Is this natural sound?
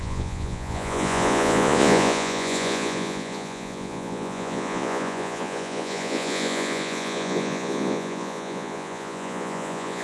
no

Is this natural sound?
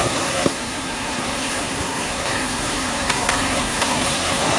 no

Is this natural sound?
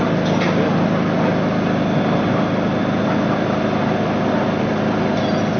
yes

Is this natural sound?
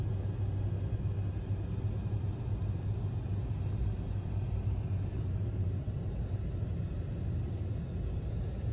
yes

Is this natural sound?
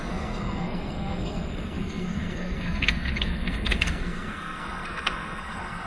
no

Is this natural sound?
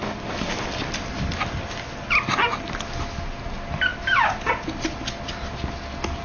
yes